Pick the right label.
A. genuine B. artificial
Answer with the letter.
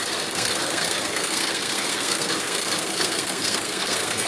B